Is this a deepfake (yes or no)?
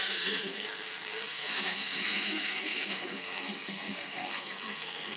yes